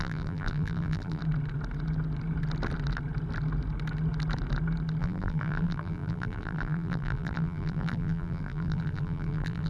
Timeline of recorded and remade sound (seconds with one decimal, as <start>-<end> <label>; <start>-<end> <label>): 0.0-1.2 remade; 1.2-5.0 recorded; 5.0-9.7 remade